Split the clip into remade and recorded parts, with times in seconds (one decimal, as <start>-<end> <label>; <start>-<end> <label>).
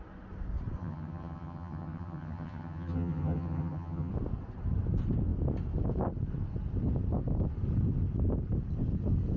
0.0-0.8 recorded; 0.8-4.1 remade; 4.1-9.4 recorded